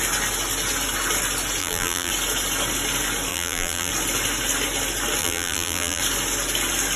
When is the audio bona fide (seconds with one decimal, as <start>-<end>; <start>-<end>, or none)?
0.0-1.6; 2.1-3.3; 3.9-5.2; 6.0-7.0